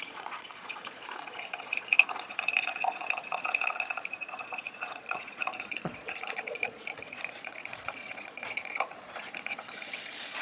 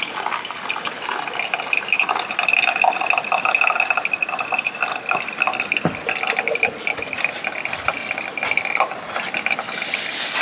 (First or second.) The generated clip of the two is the first